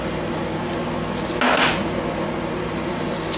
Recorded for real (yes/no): yes